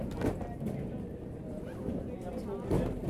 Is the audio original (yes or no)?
yes